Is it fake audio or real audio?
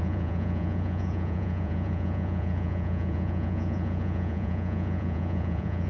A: fake